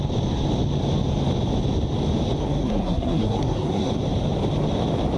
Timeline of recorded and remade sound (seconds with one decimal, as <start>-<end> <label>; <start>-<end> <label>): 0.0-2.4 recorded; 2.4-3.9 remade; 3.9-5.2 recorded